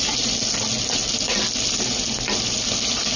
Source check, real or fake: real